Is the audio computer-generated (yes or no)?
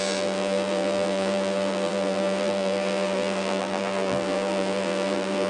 yes